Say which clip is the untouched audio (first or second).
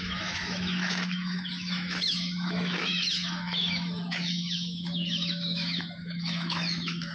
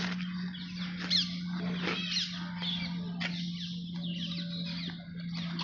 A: second